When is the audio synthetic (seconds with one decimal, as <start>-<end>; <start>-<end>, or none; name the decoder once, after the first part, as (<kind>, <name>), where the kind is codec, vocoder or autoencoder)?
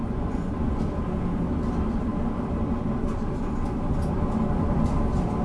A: 0.0-0.8 (vocoder, Vocos)